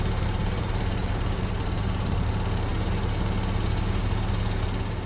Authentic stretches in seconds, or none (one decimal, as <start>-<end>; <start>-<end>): 0.0-0.4; 2.3-5.1